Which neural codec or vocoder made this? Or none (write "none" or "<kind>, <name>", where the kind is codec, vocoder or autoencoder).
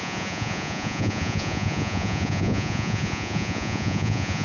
vocoder, Vocos